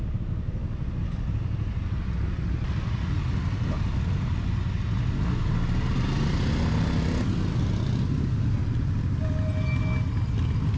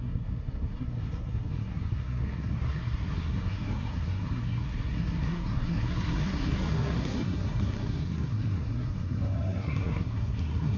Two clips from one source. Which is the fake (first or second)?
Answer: second